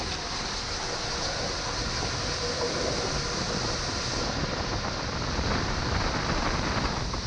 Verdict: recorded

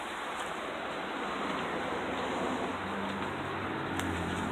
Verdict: recorded